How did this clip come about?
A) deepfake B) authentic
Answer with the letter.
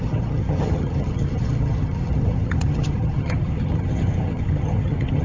A